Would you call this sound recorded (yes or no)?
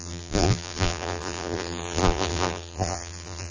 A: no